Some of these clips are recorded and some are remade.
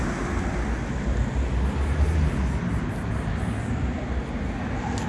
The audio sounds recorded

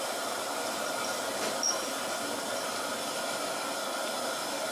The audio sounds recorded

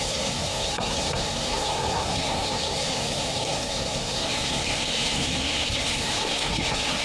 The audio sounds remade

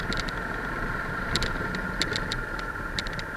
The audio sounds recorded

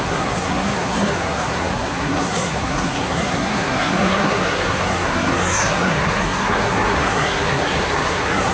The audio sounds remade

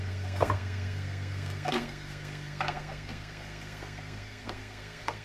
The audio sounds remade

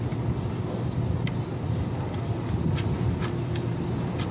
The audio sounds recorded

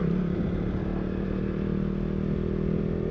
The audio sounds recorded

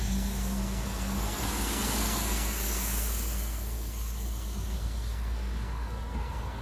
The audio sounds remade